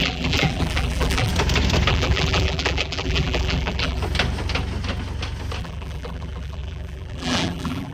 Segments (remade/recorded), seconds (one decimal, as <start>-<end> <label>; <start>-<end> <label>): 0.0-1.3 remade; 1.3-1.9 recorded; 1.9-4.0 remade; 4.0-5.6 recorded; 5.6-7.9 remade